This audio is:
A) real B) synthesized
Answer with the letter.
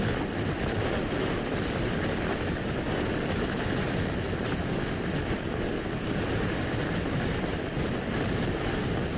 A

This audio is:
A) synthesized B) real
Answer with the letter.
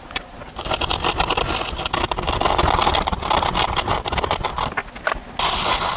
B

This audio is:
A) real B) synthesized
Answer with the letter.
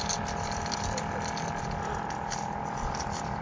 A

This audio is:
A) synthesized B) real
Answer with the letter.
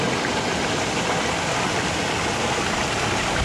B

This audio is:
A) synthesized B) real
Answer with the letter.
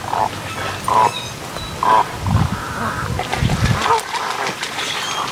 B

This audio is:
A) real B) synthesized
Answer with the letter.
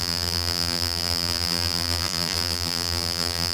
B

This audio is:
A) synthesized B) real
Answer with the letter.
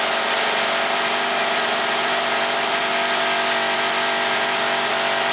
A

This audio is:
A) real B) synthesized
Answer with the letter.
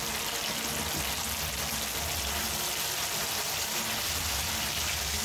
A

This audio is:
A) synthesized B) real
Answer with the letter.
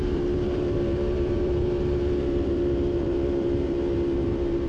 A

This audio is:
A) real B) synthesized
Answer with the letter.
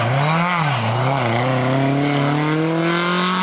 A